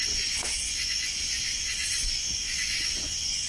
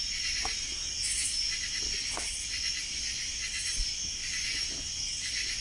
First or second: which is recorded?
second